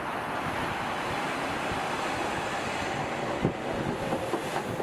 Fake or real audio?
real